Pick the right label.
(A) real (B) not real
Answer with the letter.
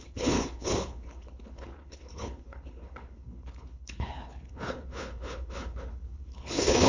B